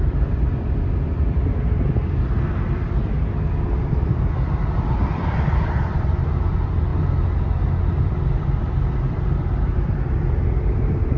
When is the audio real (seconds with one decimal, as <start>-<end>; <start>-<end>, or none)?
6.9-8.0